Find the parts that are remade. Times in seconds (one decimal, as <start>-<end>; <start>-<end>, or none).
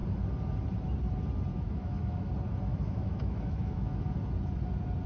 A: 1.5-2.3; 2.7-4.1